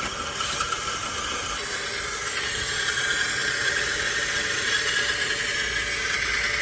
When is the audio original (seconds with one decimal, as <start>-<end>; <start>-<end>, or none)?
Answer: 0.0-6.6

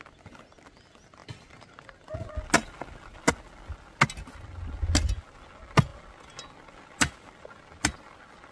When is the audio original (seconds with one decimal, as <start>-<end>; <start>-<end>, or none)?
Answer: 0.0-8.5

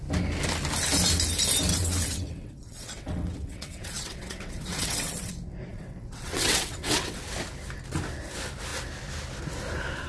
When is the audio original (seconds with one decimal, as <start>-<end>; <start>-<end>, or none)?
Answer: 0.0-1.7; 5.3-5.7; 7.2-10.1

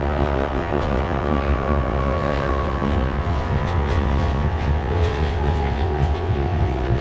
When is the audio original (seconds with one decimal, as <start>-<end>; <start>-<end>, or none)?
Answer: none